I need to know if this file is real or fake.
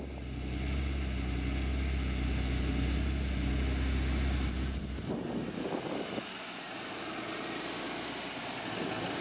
real